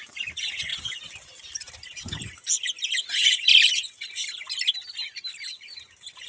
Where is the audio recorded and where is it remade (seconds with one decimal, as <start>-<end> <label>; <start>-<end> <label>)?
0.0-6.3 recorded